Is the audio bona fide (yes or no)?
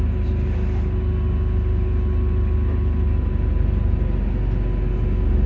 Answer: yes